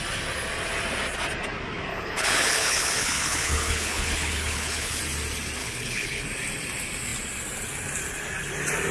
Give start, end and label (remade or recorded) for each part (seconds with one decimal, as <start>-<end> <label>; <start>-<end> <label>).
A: 0.0-1.9 recorded; 1.9-5.0 remade; 5.0-5.6 recorded; 5.6-6.2 remade; 6.2-8.9 recorded